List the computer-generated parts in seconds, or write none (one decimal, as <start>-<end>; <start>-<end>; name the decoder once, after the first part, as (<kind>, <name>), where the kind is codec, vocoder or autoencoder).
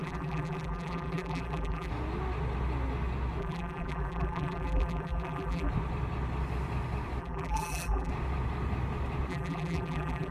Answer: 0.0-1.9 (vocoder, BigVGAN v2); 3.4-5.7; 7.2-8.1; 9.3-10.3